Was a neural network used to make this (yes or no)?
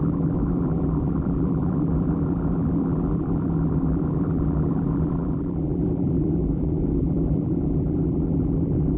yes